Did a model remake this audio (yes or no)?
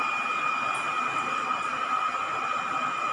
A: no